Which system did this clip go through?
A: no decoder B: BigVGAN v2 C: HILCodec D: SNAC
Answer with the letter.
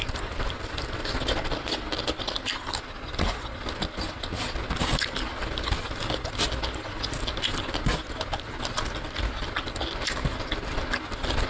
A